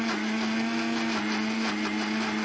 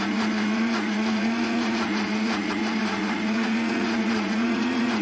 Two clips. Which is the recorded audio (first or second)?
first